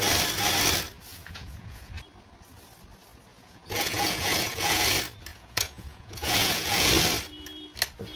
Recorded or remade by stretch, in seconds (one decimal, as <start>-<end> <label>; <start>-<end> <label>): 0.0-1.1 recorded; 1.1-1.9 remade; 1.9-3.3 recorded; 3.3-4.8 remade; 4.8-5.3 recorded; 5.3-6.9 remade; 6.9-8.2 recorded